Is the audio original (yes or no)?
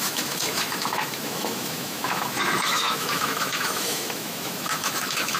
no